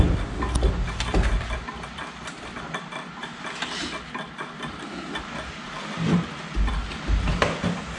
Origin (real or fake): real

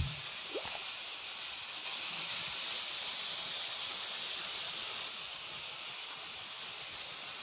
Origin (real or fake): real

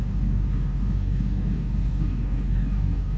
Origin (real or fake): fake